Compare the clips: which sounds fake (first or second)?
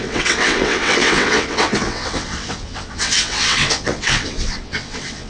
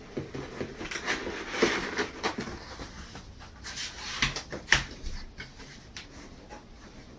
first